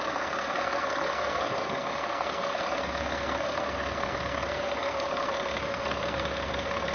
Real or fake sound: fake